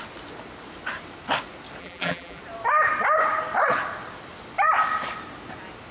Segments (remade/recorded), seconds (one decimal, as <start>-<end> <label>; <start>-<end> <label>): 0.0-1.8 recorded; 1.8-2.4 remade; 2.4-5.9 recorded